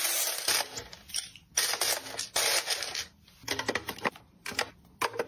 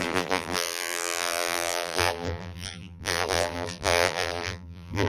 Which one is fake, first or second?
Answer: second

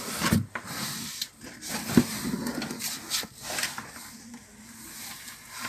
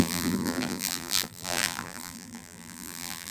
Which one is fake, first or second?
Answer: second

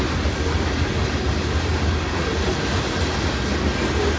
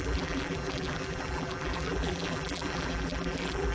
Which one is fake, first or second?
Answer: second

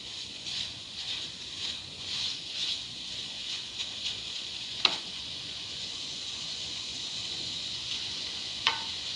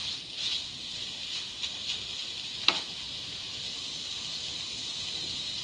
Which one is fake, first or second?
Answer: first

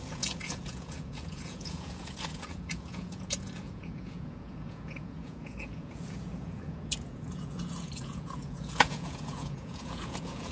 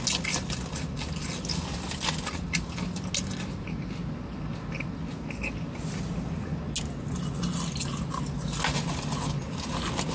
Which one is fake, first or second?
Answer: first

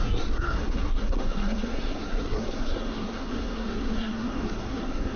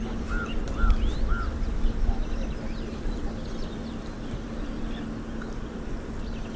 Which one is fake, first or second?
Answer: first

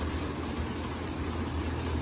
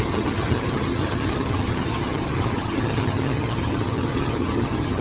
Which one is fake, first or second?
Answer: second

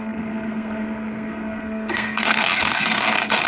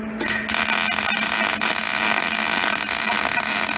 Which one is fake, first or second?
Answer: first